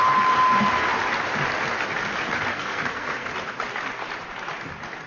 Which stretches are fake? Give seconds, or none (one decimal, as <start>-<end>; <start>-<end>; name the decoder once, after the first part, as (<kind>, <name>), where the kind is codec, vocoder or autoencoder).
2.5-3.3 (codec, SNAC)